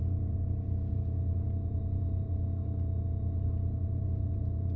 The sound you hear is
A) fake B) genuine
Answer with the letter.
A